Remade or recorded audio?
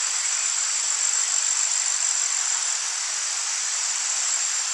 recorded